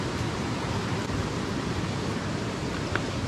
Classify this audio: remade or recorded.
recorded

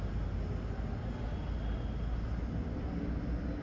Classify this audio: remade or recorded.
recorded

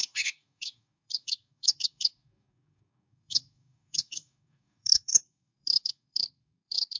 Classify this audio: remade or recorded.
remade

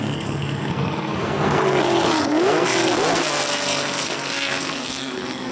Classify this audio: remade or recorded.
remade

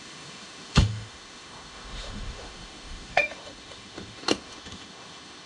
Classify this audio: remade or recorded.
remade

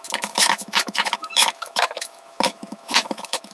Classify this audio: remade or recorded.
remade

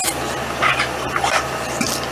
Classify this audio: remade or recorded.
recorded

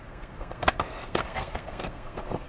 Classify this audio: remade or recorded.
remade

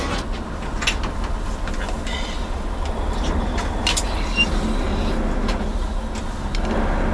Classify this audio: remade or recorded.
recorded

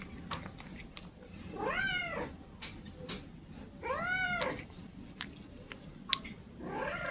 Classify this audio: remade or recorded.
recorded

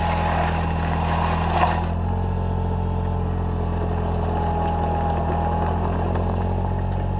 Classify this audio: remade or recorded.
recorded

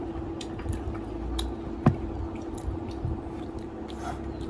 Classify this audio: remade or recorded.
recorded